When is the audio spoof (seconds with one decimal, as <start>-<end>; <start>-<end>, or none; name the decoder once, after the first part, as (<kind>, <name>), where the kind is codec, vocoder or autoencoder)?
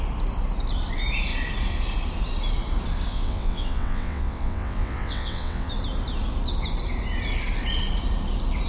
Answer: 3.1-5.7 (vocoder, WaveNeXt)